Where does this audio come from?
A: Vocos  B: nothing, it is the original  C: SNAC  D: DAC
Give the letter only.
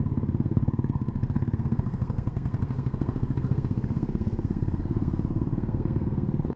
C